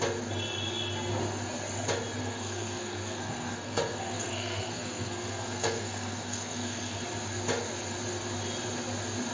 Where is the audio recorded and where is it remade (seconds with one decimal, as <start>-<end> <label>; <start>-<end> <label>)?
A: 0.0-2.2 recorded; 2.2-7.0 remade; 7.0-9.3 recorded